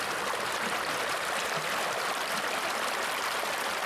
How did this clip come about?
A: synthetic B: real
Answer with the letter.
B